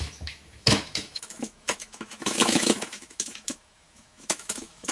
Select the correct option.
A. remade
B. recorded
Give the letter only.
A